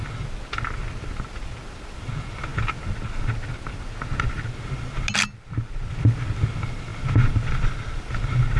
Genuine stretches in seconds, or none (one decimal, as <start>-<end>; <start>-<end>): 0.0-8.6